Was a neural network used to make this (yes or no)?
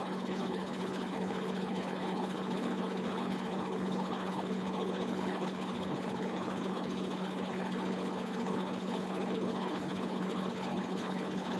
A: yes